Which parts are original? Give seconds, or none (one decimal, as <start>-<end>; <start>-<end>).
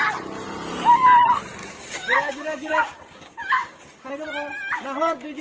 0.0-1.6; 4.1-5.4